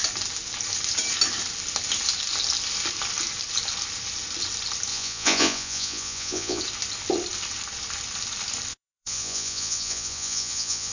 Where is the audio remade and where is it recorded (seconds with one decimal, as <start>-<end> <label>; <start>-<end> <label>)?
0.0-4.9 recorded; 4.9-6.6 remade; 6.6-8.7 recorded; 8.7-10.9 remade